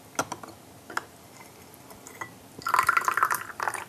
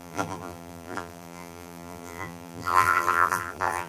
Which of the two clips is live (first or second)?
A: first